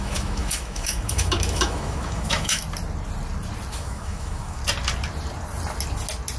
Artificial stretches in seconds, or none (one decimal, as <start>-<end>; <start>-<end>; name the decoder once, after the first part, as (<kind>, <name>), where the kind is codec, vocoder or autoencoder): 0.0-2.6 (autoencoder, DAC-VAE); 3.7-4.6